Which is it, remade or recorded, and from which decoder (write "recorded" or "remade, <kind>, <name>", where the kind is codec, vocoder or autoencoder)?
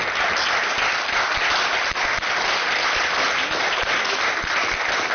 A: recorded